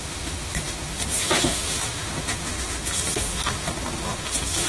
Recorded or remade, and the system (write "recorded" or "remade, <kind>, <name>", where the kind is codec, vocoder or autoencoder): remade, autoencoder, DAC-VAE